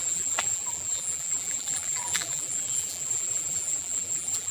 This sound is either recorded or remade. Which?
remade